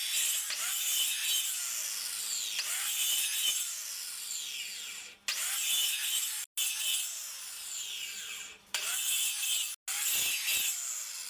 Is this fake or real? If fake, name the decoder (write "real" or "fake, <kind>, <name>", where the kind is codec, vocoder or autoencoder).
real